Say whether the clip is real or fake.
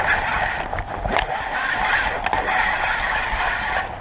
real